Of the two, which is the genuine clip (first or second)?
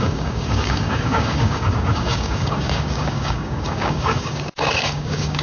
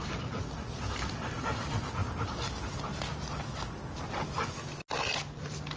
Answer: second